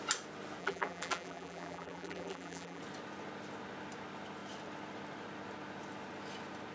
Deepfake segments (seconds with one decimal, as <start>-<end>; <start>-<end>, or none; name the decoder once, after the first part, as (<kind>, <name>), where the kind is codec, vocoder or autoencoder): 0.6-2.8 (vocoder, BigVGAN v2)